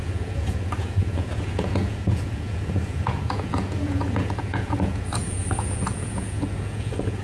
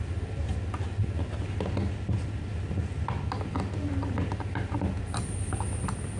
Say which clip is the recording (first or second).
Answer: second